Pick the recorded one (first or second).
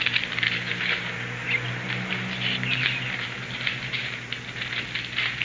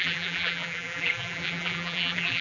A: first